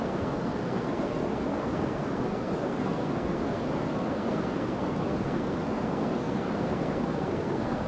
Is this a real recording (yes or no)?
no